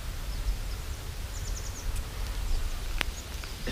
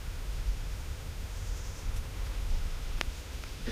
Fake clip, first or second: second